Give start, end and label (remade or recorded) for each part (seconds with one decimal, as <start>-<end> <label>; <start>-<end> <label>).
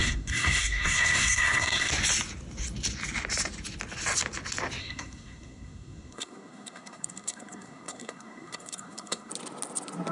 0.0-1.9 remade; 1.9-4.8 recorded; 4.8-9.3 remade; 9.3-10.1 recorded